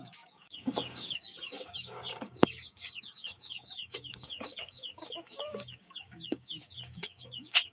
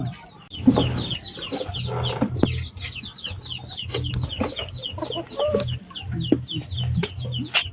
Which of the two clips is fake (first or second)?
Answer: first